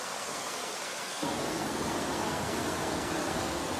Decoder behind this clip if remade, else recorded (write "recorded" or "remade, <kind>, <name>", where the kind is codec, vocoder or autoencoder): remade, codec, SNAC